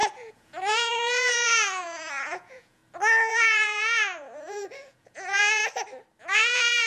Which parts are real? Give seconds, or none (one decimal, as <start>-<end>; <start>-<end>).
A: 2.8-3.3; 5.6-6.2